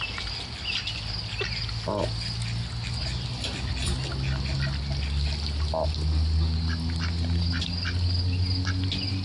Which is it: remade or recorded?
recorded